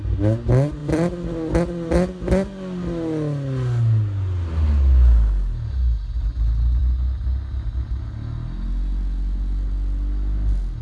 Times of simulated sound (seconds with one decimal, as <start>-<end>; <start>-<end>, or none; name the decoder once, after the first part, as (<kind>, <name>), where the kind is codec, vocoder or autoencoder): none